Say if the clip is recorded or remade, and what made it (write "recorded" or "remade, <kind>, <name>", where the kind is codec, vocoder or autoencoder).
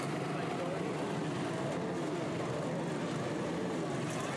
recorded